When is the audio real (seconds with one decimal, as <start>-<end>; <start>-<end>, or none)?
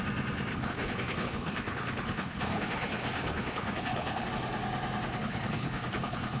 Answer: 0.0-0.5; 4.3-5.2